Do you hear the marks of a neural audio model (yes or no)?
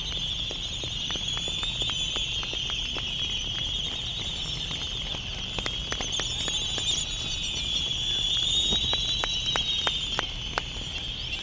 no